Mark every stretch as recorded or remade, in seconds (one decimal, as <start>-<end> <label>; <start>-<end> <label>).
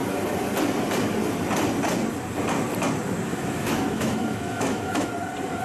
0.0-3.3 recorded; 3.3-5.1 remade; 5.1-5.6 recorded